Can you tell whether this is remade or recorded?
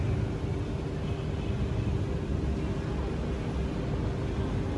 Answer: recorded